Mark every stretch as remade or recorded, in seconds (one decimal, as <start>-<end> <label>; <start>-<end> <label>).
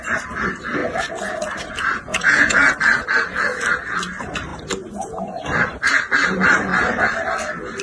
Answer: 0.0-2.1 recorded; 2.1-2.7 remade; 2.7-7.8 recorded